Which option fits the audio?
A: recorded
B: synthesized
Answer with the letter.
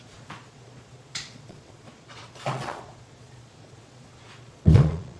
B